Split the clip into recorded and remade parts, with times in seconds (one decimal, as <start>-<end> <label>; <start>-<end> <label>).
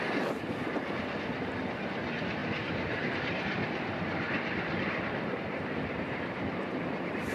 0.0-2.4 recorded; 2.4-6.8 remade; 6.8-7.3 recorded